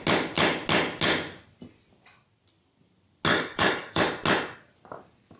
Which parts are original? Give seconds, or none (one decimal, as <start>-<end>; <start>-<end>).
0.0-3.3; 4.0-5.4